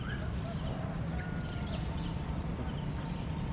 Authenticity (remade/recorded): recorded